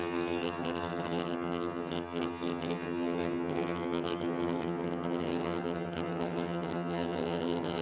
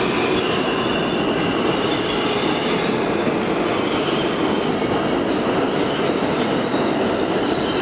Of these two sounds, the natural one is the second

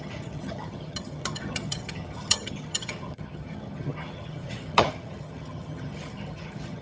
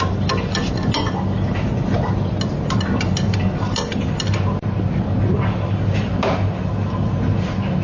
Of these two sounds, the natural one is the second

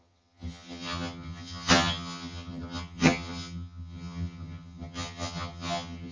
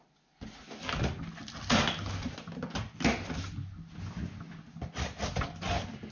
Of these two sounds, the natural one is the second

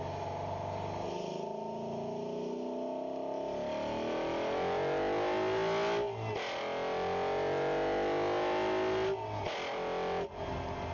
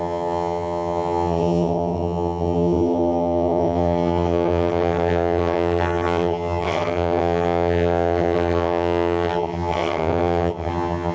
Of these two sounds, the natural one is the first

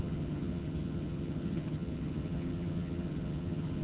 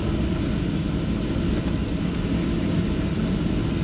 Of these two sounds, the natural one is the second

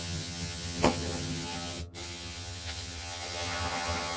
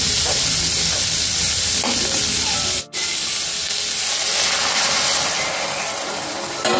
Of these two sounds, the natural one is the second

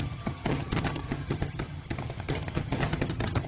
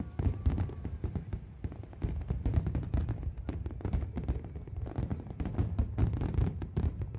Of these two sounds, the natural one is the second